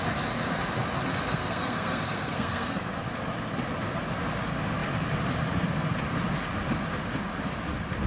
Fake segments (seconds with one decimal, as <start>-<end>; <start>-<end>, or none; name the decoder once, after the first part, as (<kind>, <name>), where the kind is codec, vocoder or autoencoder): 1.3-2.9 (codec, SNAC)